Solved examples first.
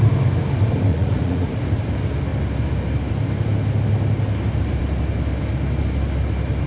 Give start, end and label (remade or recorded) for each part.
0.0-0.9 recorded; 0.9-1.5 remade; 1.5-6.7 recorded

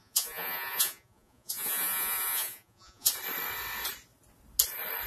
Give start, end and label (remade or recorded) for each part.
0.0-3.1 remade; 3.1-5.1 recorded